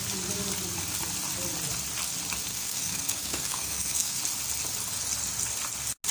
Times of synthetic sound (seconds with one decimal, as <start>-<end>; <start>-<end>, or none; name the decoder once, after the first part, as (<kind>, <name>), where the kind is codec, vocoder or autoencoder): 2.5-4.2 (codec, SNAC)